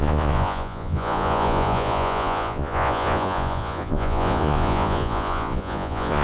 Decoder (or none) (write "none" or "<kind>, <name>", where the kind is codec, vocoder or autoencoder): vocoder, Vocos